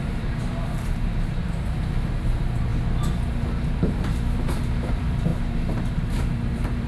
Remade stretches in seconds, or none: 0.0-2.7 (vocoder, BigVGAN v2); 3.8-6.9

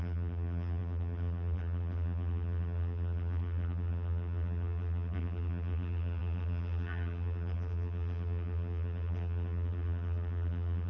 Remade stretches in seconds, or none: 0.0-10.9 (vocoder, BigVGAN v2)